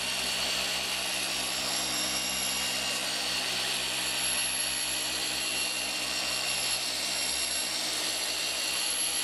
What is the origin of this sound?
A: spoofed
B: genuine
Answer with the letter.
A